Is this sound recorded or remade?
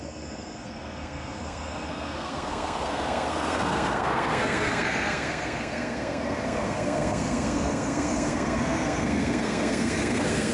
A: remade